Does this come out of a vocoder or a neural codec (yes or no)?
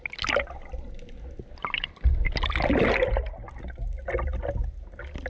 no